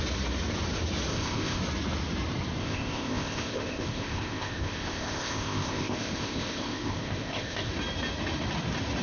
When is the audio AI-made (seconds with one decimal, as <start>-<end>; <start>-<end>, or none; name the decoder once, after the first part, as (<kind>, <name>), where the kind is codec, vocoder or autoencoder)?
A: 1.1-1.6 (codec, ZipCodec); 2.6-7.7